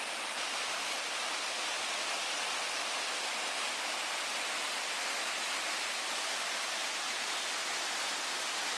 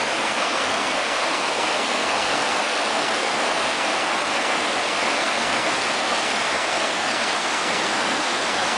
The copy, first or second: second